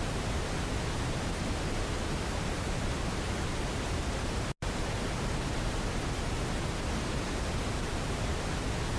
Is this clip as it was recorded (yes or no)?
yes